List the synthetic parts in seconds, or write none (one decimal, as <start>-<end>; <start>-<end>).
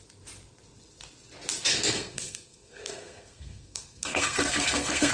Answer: 1.7-5.1